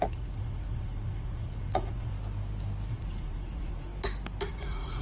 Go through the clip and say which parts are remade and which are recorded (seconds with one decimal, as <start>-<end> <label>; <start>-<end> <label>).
0.0-2.1 remade; 2.1-2.9 recorded; 2.9-3.9 remade; 3.9-4.5 recorded; 4.5-5.0 remade